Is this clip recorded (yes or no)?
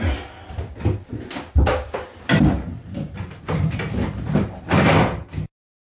yes